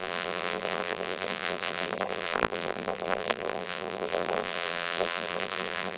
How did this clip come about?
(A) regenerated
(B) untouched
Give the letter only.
A